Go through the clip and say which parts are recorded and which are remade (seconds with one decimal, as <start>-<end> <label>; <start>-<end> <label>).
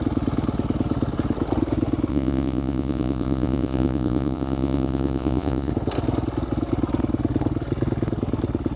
0.0-2.1 recorded; 2.1-5.7 remade; 5.7-8.8 recorded